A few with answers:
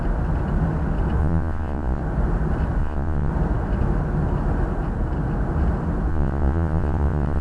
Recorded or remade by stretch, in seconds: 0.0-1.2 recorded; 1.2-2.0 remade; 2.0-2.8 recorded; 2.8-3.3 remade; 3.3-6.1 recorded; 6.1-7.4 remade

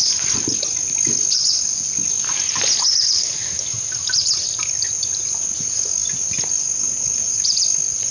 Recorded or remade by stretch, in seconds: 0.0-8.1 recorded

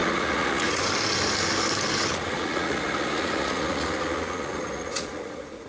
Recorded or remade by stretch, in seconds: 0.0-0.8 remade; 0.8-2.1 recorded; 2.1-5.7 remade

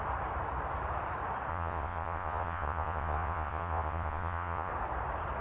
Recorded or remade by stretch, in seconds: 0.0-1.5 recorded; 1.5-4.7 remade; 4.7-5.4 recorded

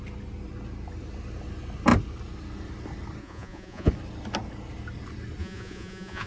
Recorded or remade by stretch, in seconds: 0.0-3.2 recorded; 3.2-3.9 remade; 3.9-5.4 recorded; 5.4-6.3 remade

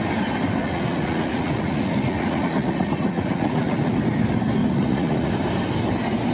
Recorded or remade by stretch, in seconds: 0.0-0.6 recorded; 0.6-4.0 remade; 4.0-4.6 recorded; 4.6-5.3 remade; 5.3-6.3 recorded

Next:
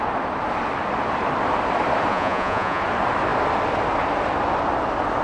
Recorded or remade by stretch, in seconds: 0.0-2.1 recorded; 2.1-2.8 remade; 2.8-5.2 recorded